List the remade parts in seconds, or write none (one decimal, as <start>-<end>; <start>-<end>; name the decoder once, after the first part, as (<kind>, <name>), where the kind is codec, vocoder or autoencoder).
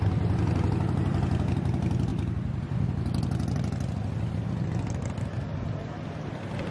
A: none